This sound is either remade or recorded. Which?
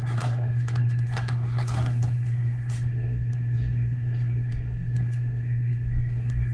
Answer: remade